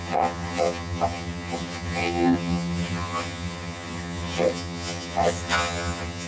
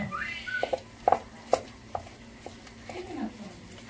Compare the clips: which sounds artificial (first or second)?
first